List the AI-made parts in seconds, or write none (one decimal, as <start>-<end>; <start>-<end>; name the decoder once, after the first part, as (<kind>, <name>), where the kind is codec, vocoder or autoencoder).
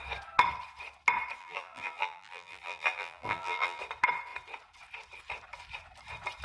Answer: 1.4-3.8 (vocoder, BigVGAN v2)